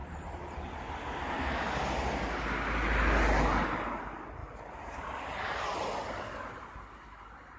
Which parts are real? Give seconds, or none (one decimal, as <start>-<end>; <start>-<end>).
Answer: 0.0-7.6